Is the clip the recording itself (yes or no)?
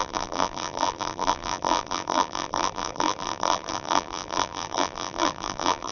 no